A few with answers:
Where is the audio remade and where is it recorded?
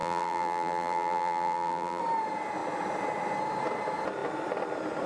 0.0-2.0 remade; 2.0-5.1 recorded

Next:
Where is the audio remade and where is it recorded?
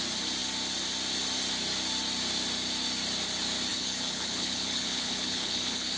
0.0-3.7 recorded; 3.7-6.0 remade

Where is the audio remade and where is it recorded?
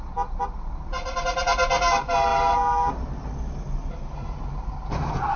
0.0-2.3 recorded; 2.3-3.1 remade; 3.1-5.4 recorded